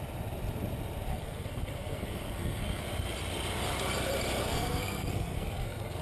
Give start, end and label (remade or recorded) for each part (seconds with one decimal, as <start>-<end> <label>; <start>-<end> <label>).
0.0-1.1 recorded; 1.1-2.8 remade; 2.8-4.4 recorded; 4.4-6.0 remade

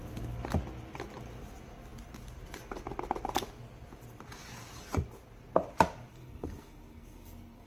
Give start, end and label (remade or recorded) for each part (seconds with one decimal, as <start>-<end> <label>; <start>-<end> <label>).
0.0-6.1 recorded; 6.1-7.7 remade

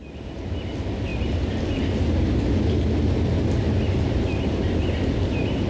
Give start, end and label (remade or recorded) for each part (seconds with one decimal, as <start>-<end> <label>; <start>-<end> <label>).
0.0-5.7 recorded

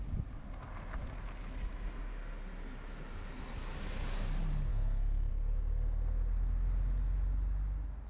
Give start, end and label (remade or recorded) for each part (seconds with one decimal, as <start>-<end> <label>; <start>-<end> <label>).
0.0-4.7 recorded; 4.7-5.3 remade; 5.3-8.1 recorded

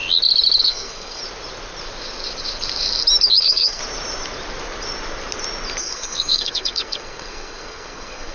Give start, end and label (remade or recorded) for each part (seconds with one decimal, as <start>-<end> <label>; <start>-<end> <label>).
0.0-0.6 recorded; 0.6-1.2 remade; 1.2-3.4 recorded; 3.4-3.8 remade; 3.8-5.8 recorded; 5.8-8.3 remade

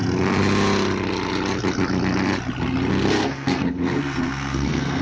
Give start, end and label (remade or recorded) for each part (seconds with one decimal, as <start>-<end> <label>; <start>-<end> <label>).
0.0-2.9 recorded; 2.9-5.0 remade

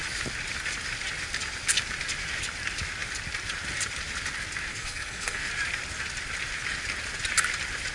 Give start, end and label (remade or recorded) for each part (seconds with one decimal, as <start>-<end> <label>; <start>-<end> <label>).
0.0-4.7 recorded; 4.7-5.5 remade; 5.5-7.9 recorded